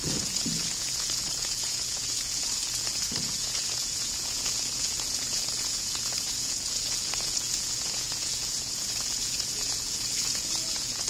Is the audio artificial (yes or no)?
yes